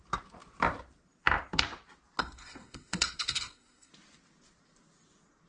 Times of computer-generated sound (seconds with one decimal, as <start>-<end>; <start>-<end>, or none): 2.2-3.9